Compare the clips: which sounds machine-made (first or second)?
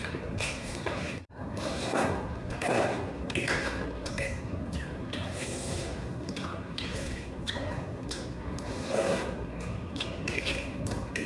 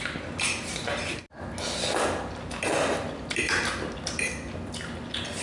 first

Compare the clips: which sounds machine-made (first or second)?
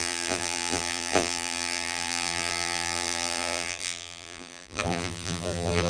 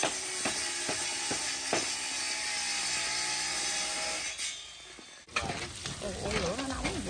first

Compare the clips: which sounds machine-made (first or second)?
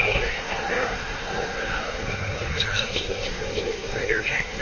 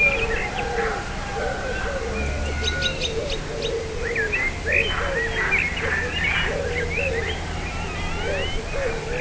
first